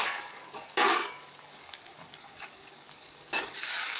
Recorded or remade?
remade